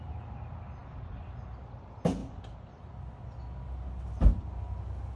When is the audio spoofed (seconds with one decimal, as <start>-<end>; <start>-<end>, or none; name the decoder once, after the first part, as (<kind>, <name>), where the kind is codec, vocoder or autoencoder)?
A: none